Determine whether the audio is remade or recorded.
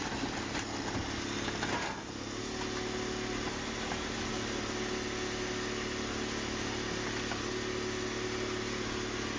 recorded